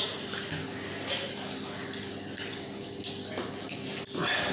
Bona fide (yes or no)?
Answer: yes